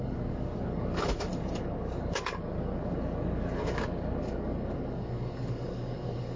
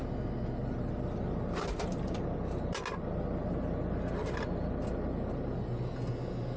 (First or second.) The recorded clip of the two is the second